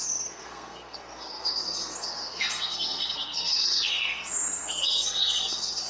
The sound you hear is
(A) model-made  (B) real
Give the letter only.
A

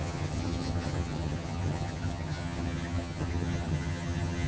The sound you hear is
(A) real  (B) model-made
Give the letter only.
B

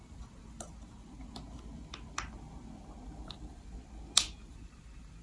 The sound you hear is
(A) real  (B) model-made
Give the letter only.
A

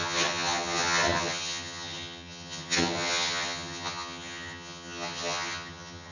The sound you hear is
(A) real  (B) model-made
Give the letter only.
B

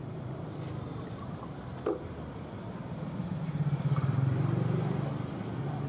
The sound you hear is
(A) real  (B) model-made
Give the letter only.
B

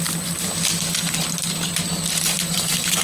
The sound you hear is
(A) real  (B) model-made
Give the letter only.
A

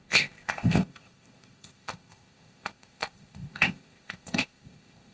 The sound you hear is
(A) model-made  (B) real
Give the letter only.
A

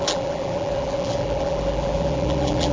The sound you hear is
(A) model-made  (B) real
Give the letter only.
A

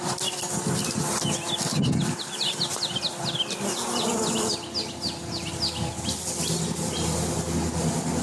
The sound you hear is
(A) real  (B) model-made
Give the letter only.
A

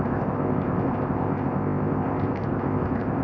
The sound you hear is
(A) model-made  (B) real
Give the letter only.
A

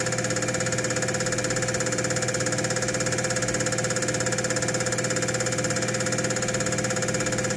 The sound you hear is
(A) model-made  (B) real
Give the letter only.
B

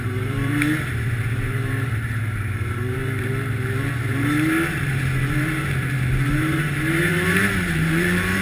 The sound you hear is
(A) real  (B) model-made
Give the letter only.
B